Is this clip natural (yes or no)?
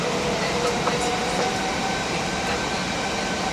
no